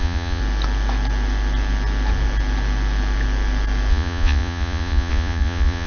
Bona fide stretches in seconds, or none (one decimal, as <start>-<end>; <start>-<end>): 0.4-3.9